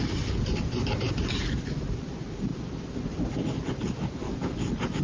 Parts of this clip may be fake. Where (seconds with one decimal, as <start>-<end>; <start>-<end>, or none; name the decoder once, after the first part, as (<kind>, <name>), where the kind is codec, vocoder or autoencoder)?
none